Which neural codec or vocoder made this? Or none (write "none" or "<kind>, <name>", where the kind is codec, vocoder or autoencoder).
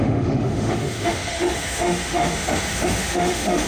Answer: autoencoder, DAC-VAE